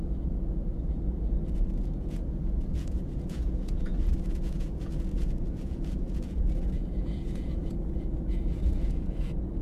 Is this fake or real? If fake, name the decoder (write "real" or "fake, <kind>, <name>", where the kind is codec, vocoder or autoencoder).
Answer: fake, vocoder, Vocos